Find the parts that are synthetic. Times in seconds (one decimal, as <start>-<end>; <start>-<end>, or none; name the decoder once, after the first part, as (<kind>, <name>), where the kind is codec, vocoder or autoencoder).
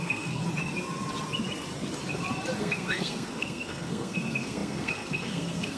0.0-0.4 (codec, SNAC); 2.6-5.8